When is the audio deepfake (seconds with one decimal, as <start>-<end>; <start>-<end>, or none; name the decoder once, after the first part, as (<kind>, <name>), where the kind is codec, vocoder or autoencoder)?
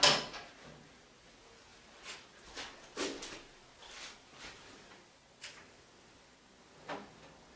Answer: none